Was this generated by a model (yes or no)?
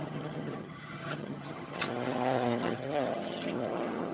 yes